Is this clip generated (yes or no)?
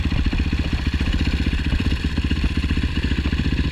yes